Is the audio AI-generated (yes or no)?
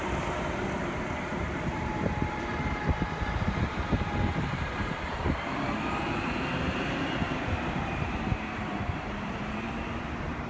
yes